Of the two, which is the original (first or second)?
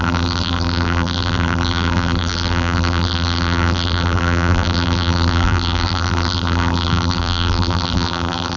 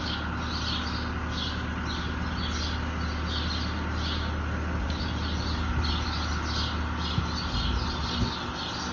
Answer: second